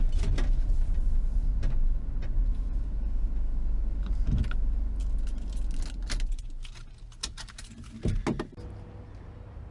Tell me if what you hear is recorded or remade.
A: recorded